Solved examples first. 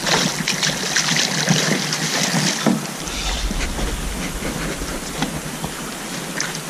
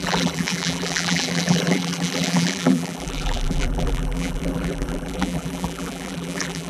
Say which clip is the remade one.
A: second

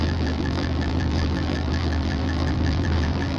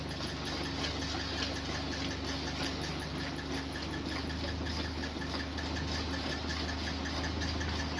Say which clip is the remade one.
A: first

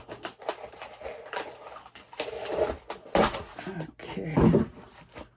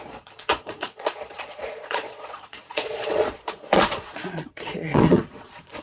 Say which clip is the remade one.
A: second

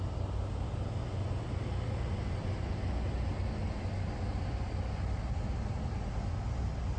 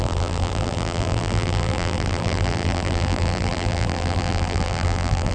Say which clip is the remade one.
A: second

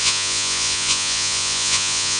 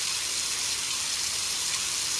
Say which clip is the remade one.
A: first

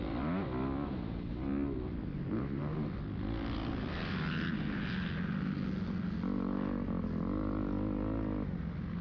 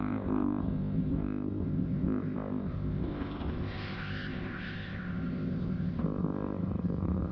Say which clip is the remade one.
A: second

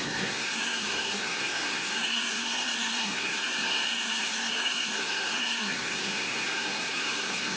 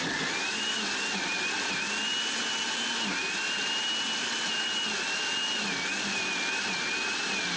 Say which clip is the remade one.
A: first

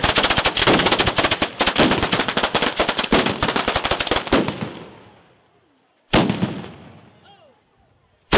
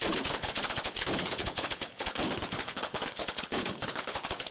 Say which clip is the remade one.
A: second